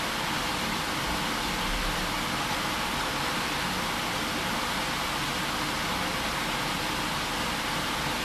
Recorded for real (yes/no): yes